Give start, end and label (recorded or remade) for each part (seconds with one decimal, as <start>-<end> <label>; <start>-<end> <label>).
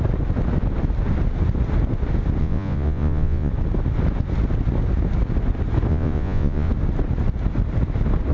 0.0-2.4 recorded; 2.4-3.5 remade; 3.5-5.9 recorded; 5.9-6.7 remade; 6.7-8.3 recorded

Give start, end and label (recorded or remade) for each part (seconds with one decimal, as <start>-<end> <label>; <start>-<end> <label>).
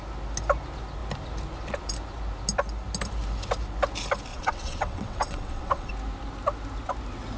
0.0-4.3 recorded; 4.3-5.9 remade; 5.9-7.4 recorded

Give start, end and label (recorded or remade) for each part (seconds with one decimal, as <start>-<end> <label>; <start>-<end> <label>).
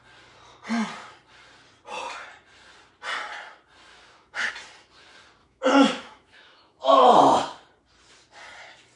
0.0-3.9 recorded; 3.9-4.5 remade; 4.5-5.4 recorded; 5.4-7.0 remade; 7.0-9.0 recorded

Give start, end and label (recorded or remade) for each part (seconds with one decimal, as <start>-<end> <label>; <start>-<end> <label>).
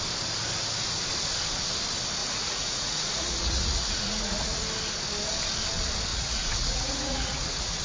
0.0-2.2 recorded; 2.2-4.6 remade; 4.6-6.1 recorded; 6.1-7.8 remade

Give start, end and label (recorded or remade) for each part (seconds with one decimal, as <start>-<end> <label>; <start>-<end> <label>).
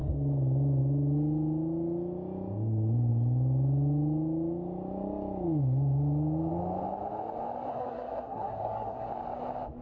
0.0-7.7 recorded; 7.7-9.1 remade; 9.1-9.8 recorded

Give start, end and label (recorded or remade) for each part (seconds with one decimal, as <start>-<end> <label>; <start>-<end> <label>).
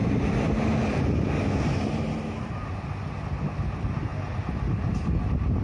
0.0-5.6 recorded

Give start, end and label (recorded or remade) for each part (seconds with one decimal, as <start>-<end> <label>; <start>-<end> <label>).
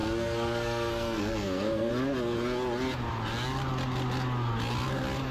0.0-1.9 remade; 1.9-5.3 recorded